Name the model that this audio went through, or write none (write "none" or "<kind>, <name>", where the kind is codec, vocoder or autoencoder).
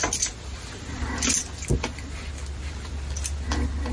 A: none